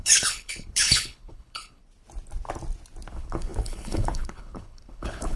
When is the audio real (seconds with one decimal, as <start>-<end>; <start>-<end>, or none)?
1.8-3.1